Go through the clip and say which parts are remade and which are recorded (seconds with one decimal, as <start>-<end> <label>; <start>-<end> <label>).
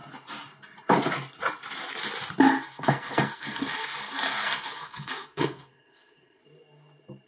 0.0-2.5 recorded; 2.5-6.4 remade; 6.4-7.3 recorded